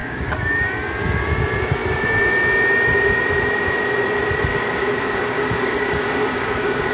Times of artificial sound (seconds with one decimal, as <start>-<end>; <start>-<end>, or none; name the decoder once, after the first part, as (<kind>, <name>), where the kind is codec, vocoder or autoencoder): 0.0-0.7 (codec, DAC); 4.5-6.9